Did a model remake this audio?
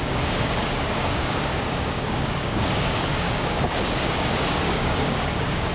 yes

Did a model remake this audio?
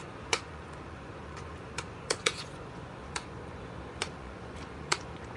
yes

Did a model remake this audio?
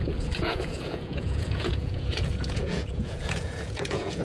yes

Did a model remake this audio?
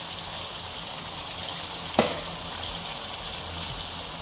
no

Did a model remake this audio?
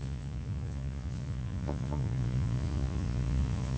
yes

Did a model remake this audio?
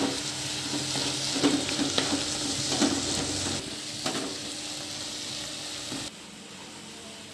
no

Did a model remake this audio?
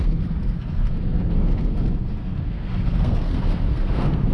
yes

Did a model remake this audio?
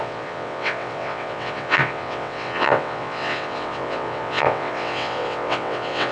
yes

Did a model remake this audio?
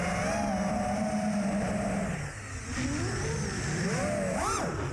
no